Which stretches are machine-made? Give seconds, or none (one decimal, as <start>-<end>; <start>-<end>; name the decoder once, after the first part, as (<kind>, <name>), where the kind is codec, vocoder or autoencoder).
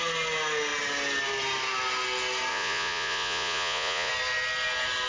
2.5-4.1 (vocoder, Vocos)